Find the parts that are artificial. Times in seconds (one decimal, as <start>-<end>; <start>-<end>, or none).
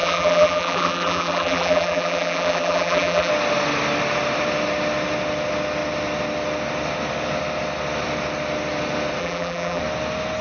0.0-3.3; 9.2-9.8